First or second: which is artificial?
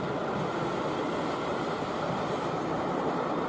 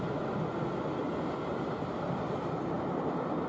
first